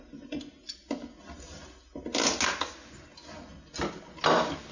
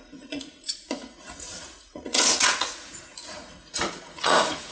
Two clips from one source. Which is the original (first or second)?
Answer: first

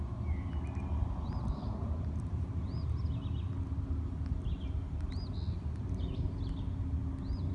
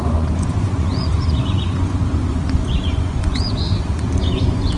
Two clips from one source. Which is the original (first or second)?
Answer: first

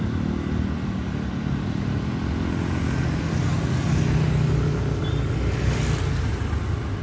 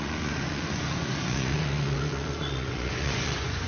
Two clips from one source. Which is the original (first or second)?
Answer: first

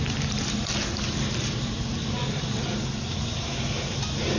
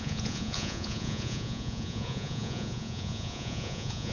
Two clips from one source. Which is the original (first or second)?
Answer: first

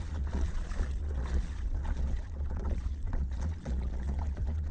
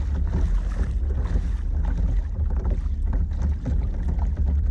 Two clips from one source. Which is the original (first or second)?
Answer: second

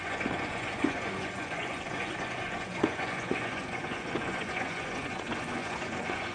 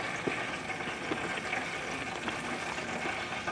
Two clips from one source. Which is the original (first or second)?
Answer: second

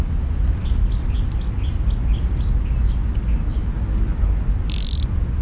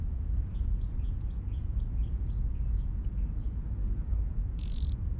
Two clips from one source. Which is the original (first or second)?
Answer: first